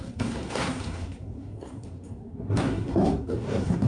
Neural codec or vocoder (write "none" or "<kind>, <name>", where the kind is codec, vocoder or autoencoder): codec, SNAC